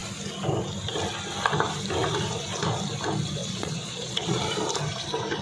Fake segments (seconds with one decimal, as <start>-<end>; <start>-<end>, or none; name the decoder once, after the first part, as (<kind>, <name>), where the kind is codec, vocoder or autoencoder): 3.4-4.4 (vocoder, Vocos)